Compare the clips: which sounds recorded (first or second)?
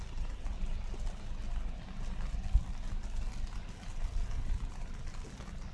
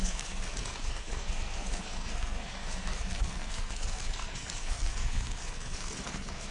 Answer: first